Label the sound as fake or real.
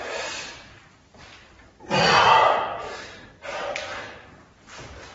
real